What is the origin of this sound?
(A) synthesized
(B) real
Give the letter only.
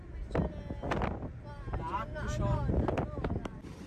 B